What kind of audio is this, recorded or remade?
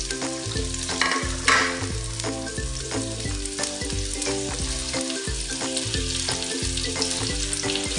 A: recorded